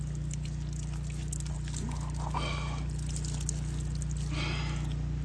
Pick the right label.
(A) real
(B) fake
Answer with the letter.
A